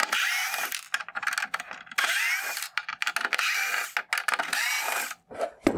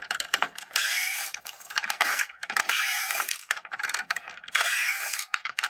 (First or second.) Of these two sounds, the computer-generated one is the second